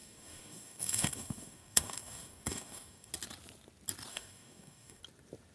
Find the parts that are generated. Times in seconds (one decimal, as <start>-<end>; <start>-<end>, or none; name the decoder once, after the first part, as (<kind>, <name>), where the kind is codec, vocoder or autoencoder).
0.0-3.1 (codec, DAC); 4.1-5.0